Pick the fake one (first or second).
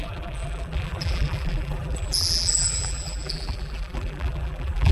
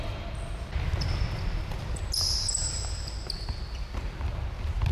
first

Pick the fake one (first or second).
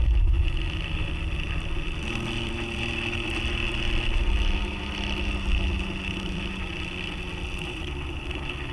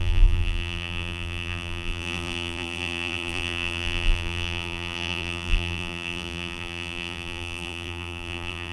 second